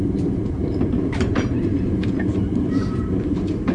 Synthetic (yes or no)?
yes